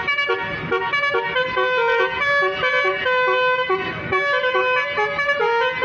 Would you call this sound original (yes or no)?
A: yes